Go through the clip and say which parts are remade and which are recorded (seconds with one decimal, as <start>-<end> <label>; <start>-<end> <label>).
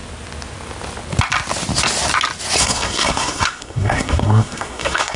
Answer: 0.0-2.6 recorded; 2.6-5.2 remade